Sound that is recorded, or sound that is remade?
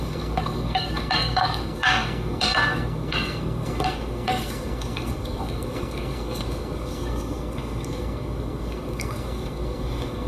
remade